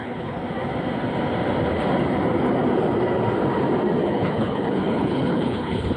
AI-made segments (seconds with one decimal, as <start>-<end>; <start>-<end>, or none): 0.0-0.4; 4.0-6.0